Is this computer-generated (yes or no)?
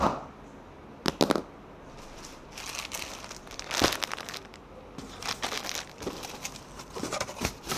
no